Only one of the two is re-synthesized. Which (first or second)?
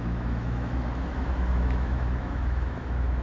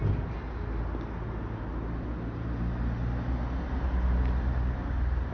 first